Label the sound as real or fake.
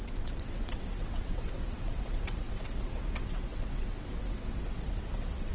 fake